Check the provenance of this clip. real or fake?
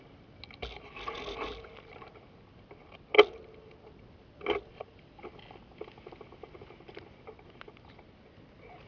real